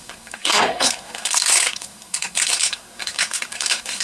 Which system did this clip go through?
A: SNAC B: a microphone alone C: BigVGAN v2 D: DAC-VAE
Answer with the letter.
A